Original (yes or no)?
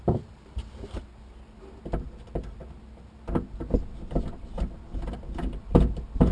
yes